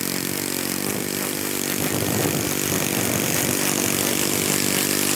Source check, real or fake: fake